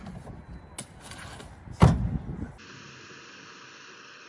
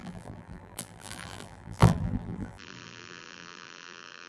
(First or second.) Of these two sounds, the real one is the first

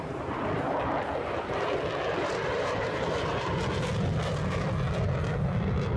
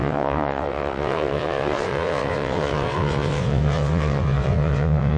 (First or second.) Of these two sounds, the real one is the first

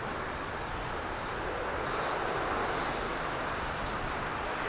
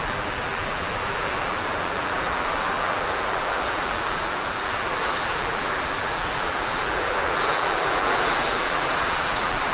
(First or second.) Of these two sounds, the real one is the first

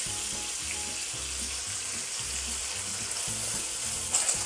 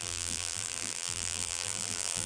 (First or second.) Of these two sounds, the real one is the first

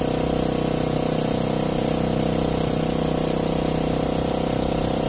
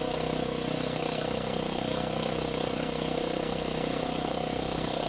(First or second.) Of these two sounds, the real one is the first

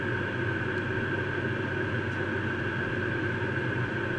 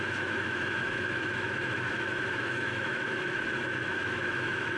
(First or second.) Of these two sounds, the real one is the first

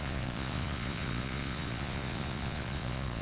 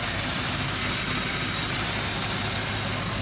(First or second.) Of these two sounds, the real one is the second